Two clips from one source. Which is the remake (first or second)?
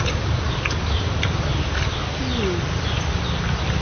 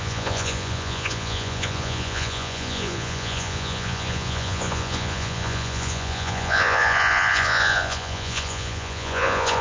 second